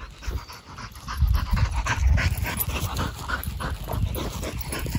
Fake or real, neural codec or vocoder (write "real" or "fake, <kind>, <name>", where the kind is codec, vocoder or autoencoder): real